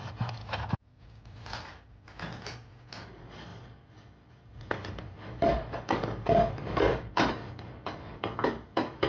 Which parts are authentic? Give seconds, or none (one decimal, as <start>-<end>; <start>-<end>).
0.4-3.1